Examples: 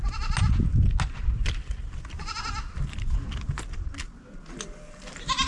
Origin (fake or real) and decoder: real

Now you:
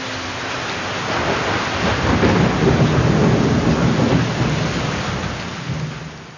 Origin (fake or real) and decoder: real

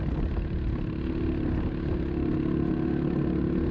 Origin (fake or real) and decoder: real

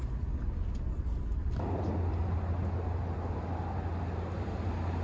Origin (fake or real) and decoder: real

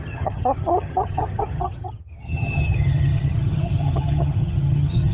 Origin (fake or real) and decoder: fake, vocoder, HiFi-GAN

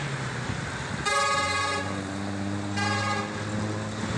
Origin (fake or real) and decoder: real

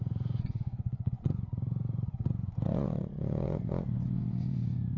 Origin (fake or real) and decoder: fake, vocoder, Vocos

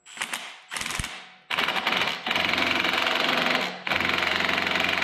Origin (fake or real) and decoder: real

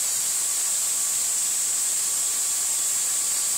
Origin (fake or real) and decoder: real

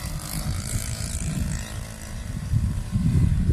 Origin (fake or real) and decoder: fake, vocoder, BigVGAN v2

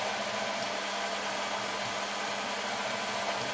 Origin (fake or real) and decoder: real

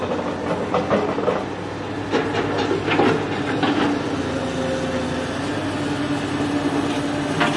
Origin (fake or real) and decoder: real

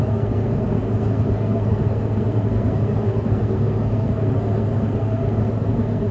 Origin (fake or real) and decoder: fake, codec, SNAC